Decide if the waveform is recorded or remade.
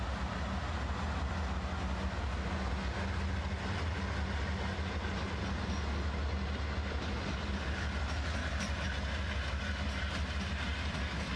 recorded